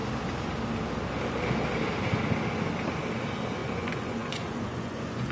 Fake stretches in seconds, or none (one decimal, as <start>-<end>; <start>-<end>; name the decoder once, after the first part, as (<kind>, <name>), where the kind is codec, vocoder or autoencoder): 3.6-5.3 (vocoder, Vocos)